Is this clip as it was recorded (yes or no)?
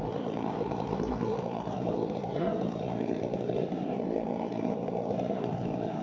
no